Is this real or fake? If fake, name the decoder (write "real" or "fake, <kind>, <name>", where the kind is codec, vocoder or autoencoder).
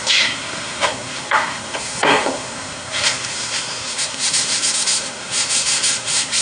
fake, codec, SNAC